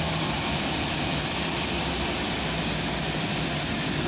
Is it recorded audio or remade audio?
recorded